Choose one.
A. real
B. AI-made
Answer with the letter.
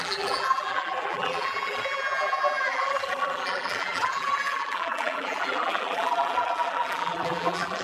B